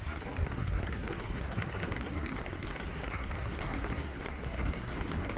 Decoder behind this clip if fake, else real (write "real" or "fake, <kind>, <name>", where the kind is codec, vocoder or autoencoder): fake, codec, SNAC